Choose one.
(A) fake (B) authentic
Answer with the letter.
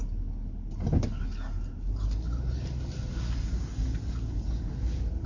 B